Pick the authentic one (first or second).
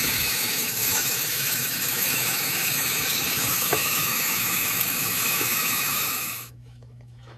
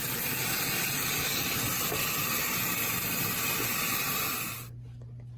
second